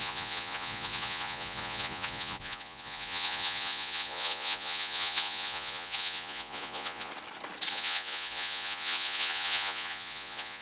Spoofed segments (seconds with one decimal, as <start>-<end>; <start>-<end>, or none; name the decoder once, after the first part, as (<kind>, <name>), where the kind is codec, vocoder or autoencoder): 0.0-7.1 (vocoder, Vocos); 7.7-10.6